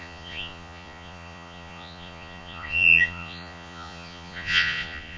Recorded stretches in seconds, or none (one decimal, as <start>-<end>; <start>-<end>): none